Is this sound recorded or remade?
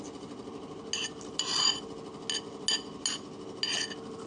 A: recorded